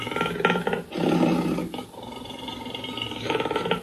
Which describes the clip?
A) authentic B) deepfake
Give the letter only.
A